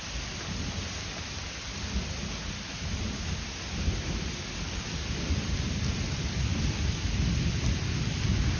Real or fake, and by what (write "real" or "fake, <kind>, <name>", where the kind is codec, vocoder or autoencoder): real